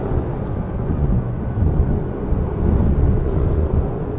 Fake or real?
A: fake